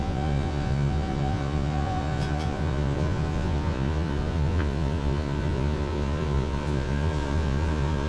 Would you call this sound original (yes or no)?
no